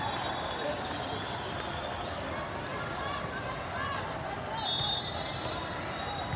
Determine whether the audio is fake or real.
real